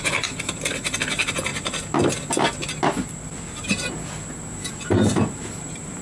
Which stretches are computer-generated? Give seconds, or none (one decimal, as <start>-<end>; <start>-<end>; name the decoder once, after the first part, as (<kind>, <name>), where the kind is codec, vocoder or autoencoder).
0.0-1.5 (vocoder, BigVGAN v2); 3.9-6.0